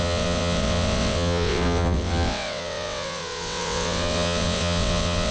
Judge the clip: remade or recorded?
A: remade